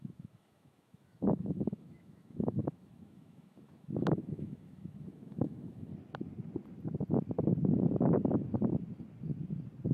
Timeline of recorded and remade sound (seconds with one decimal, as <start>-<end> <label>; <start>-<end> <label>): 0.0-5.9 remade; 5.9-9.9 recorded